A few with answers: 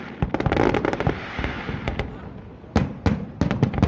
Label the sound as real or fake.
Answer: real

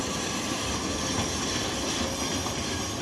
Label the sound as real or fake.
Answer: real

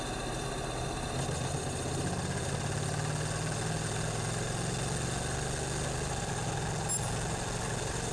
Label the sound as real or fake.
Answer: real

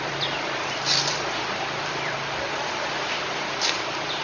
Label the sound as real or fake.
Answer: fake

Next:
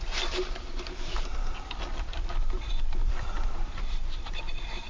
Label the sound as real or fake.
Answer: fake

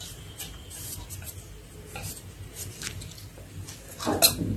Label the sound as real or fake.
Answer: real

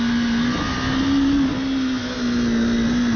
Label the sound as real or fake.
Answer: real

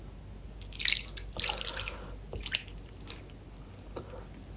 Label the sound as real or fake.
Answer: real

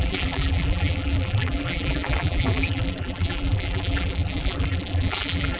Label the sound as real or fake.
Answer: fake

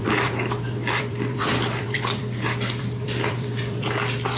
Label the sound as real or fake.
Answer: fake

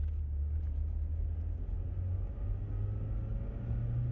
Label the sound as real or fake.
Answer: real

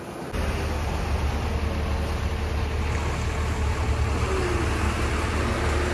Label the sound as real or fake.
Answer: real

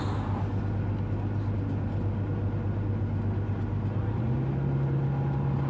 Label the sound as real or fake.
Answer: real